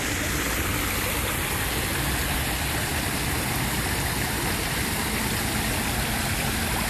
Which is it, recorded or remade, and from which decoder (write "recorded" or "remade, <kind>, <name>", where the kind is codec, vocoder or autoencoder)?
recorded